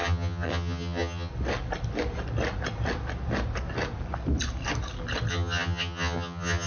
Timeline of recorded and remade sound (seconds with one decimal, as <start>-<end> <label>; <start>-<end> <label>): 0.0-1.3 remade; 1.3-5.3 recorded; 5.3-6.7 remade